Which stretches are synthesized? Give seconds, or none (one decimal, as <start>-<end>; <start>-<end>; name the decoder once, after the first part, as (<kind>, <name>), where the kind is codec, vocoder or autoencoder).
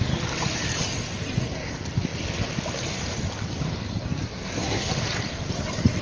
4.2-4.9 (codec, SNAC)